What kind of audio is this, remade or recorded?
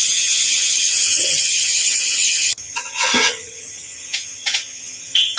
remade